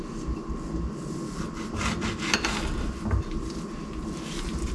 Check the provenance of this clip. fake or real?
real